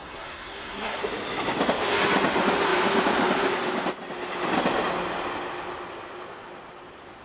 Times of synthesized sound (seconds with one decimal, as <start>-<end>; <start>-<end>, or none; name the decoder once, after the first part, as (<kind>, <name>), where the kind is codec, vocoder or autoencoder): 0.0-1.0 (codec, SNAC)